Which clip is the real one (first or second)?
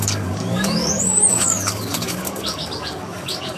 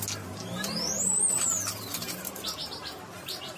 second